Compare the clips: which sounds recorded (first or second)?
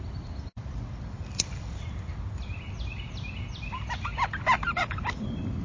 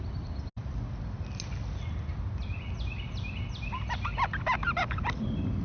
second